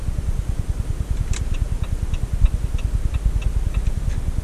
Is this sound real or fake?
real